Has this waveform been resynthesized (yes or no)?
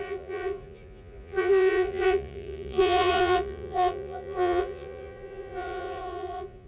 yes